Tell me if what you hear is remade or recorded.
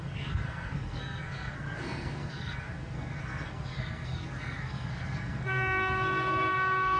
remade